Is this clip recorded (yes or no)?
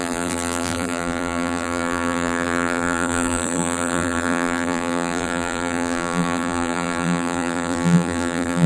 no